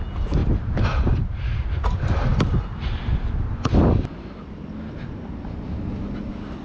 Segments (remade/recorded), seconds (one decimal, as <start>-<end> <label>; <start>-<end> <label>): 0.0-6.6 recorded